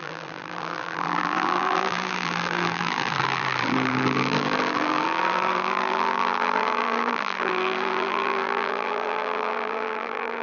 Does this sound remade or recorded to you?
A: remade